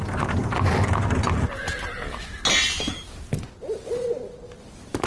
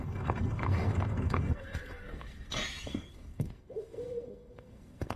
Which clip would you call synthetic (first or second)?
second